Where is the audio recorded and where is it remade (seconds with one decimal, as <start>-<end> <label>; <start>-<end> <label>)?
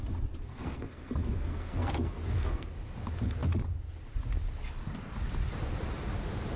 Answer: 0.0-0.5 recorded; 0.5-2.7 remade; 2.7-6.6 recorded